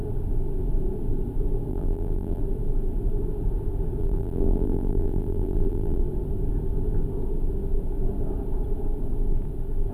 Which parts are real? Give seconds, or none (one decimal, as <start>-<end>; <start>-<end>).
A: 0.0-1.7; 2.4-4.0; 6.0-9.9